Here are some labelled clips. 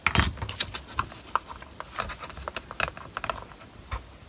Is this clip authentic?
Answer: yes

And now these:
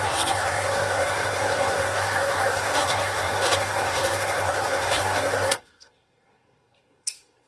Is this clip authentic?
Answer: no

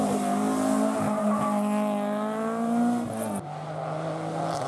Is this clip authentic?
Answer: yes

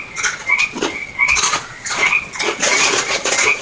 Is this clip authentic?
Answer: no